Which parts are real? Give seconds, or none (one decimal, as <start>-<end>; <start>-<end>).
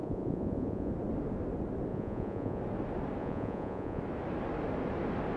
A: 0.9-1.9; 2.6-3.2; 4.0-5.4